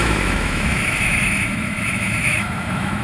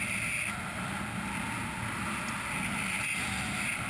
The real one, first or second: second